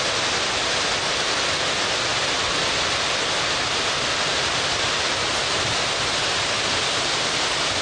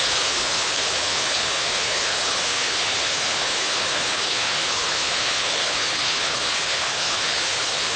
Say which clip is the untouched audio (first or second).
first